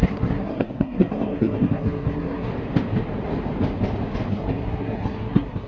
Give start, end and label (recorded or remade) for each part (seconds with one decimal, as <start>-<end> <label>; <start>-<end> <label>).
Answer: 0.0-2.5 remade; 2.5-4.3 recorded; 4.3-5.7 remade